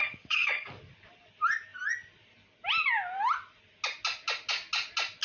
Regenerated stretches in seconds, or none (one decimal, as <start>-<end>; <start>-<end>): 0.0-0.8